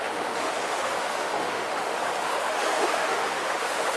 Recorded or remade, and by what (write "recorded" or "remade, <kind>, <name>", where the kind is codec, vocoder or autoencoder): remade, autoencoder, DAC-VAE